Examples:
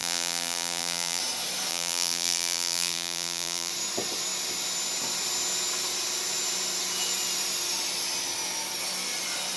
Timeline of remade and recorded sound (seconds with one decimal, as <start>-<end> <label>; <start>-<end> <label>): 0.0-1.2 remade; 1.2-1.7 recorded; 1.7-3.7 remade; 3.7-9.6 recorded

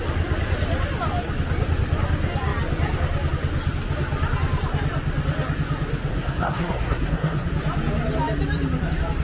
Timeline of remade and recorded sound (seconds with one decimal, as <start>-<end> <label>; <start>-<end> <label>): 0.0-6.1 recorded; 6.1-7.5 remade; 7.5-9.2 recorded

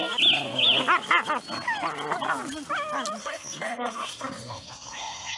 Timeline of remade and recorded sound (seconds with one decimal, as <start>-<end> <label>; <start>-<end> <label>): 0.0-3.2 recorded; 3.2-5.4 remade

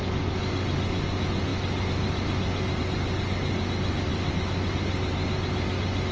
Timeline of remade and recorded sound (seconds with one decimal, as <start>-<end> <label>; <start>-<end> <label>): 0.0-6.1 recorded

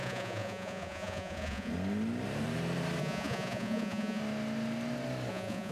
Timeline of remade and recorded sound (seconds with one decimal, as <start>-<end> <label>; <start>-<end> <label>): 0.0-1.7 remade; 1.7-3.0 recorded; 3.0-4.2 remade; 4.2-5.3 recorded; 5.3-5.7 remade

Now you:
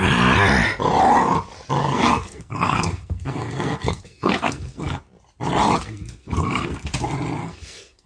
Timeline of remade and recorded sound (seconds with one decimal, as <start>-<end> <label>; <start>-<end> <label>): 0.0-1.8 recorded; 1.8-5.0 remade; 5.0-5.8 recorded; 5.8-6.9 remade; 6.9-7.4 recorded; 7.4-8.1 remade

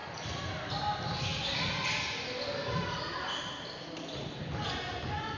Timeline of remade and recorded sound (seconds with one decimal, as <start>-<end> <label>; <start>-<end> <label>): 0.0-5.4 recorded

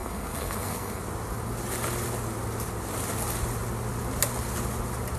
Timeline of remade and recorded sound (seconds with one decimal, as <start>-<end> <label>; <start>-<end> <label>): 0.0-1.0 remade; 1.0-5.2 recorded